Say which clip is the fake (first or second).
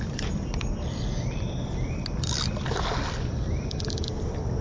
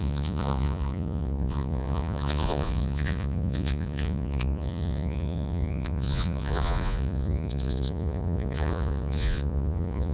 second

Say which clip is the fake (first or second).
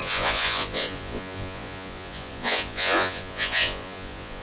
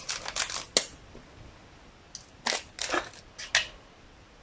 first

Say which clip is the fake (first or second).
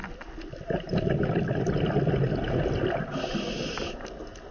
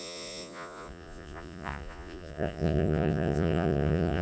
second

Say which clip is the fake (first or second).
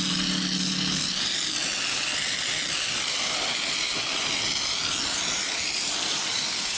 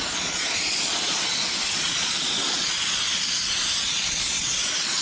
second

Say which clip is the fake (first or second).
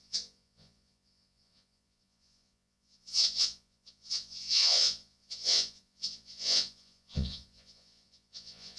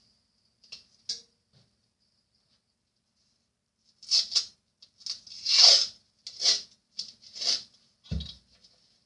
first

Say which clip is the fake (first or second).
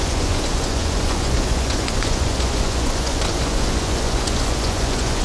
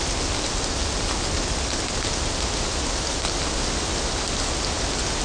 first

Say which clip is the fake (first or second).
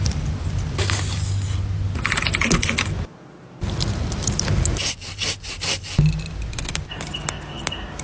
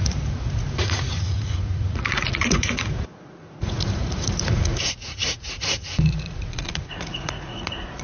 second